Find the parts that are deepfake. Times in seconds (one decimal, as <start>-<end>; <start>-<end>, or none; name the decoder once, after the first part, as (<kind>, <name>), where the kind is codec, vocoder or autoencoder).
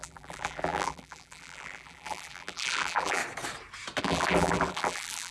0.0-3.2 (vocoder, BigVGAN v2); 4.0-5.3